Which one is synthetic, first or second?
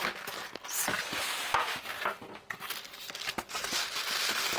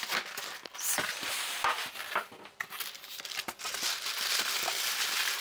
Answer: second